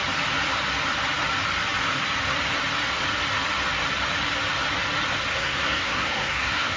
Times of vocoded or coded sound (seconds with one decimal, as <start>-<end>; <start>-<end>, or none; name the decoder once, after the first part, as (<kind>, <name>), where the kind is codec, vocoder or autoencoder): 5.3-6.8 (codec, SNAC)